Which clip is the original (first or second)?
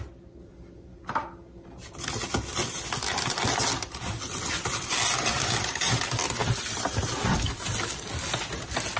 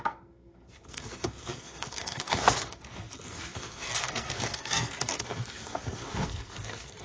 first